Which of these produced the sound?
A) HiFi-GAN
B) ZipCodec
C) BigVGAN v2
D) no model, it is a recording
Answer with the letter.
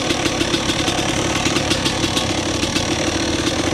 C